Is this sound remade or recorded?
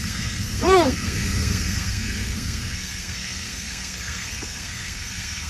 remade